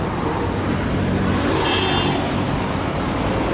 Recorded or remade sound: recorded